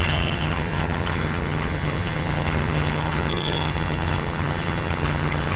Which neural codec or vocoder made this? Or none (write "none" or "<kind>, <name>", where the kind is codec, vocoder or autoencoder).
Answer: vocoder, HiFi-GAN